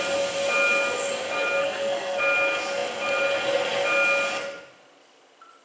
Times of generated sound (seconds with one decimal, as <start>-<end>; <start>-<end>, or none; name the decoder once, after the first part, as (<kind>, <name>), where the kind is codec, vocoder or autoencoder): 1.6-2.2 (codec, SNAC)